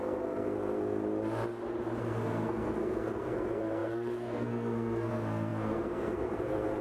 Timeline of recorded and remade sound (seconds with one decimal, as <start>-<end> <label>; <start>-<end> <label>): 0.0-1.0 remade; 1.0-2.0 recorded; 2.0-6.8 remade